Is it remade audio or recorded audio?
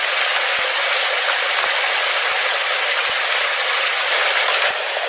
recorded